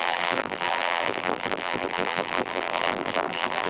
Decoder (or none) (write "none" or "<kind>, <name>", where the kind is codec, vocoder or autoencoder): vocoder, BigVGAN v2